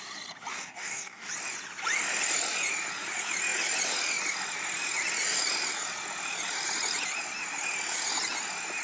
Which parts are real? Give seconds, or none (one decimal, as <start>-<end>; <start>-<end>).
0.0-0.5; 1.3-8.8